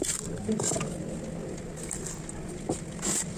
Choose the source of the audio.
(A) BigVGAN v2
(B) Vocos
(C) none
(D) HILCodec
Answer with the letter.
C